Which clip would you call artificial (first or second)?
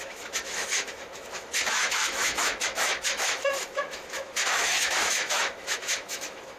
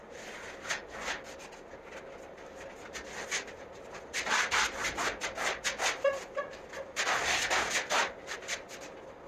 first